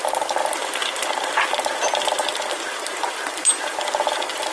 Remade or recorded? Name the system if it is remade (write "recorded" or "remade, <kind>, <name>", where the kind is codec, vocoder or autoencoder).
recorded